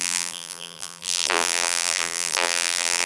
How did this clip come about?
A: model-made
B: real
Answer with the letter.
A